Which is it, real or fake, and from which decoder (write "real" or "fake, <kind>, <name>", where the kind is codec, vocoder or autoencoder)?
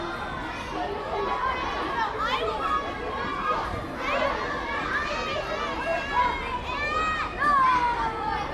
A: real